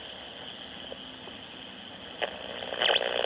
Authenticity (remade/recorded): recorded